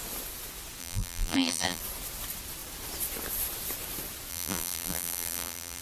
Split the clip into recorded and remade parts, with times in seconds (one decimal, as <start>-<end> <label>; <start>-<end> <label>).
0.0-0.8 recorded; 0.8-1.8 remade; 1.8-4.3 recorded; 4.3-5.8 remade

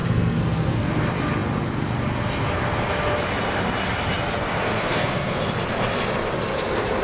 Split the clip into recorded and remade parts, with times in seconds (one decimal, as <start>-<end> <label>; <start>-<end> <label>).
0.0-0.9 remade; 0.9-4.5 recorded; 4.5-5.4 remade; 5.4-7.0 recorded

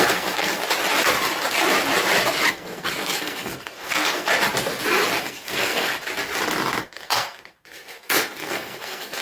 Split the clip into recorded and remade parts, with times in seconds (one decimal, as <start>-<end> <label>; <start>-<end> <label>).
0.0-0.6 remade; 0.6-2.5 recorded; 2.5-4.3 remade; 4.3-5.2 recorded; 5.2-5.9 remade; 5.9-6.8 recorded; 6.8-9.2 remade

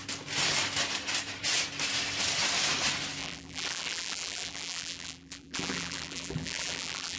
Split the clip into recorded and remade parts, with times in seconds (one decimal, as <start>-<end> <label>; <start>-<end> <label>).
0.0-3.2 recorded; 3.2-7.2 remade

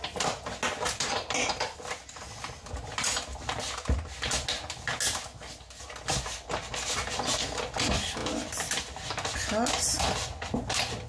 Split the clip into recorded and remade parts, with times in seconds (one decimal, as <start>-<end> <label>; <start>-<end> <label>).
0.0-11.1 recorded